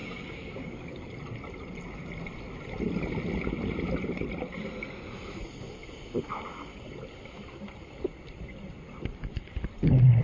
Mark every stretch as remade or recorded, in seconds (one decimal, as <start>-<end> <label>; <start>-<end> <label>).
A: 0.0-1.1 remade; 1.1-10.2 recorded